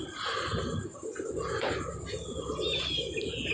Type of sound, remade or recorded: recorded